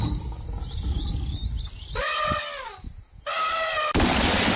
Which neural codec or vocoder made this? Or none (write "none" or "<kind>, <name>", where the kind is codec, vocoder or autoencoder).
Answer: none